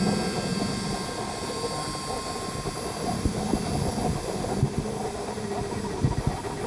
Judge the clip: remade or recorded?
recorded